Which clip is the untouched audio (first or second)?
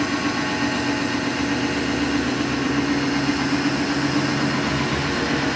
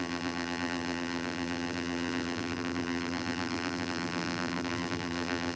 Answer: first